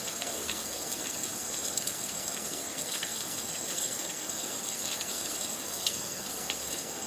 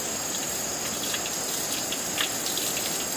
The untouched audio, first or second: second